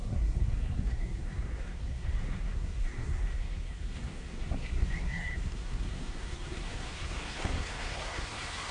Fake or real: fake